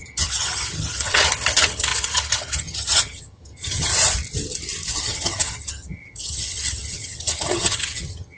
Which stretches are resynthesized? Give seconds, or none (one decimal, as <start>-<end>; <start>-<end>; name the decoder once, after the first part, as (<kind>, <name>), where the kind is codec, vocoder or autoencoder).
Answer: 0.0-3.9 (vocoder, HiFi-GAN); 4.9-8.4